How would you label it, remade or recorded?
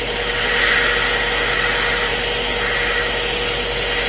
recorded